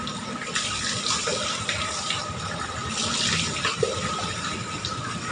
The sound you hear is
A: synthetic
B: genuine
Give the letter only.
B